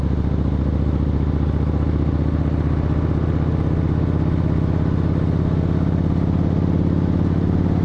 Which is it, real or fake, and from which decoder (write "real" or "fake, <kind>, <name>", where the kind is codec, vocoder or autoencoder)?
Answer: real